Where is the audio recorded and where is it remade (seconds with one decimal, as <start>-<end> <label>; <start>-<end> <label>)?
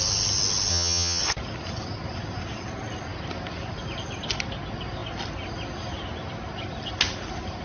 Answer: 0.0-0.7 recorded; 0.7-1.2 remade; 1.2-7.6 recorded